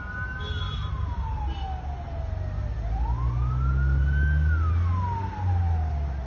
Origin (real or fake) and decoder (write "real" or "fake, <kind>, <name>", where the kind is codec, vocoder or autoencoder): real